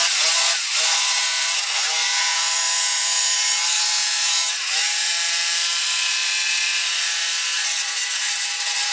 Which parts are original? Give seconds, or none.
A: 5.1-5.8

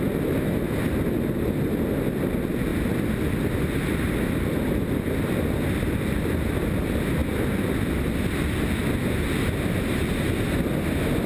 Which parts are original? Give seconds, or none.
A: 0.0-11.3